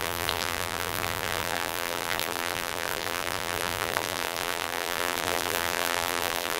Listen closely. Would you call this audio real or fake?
fake